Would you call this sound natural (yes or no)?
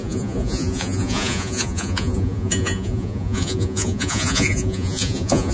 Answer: no